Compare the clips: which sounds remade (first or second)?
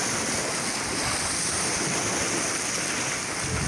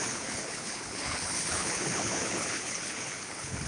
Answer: second